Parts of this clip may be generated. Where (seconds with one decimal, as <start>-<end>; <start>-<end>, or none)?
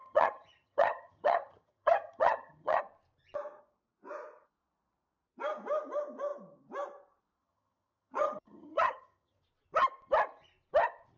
0.0-2.8; 7.4-9.4